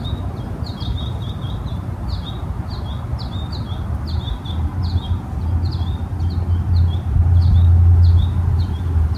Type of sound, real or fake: real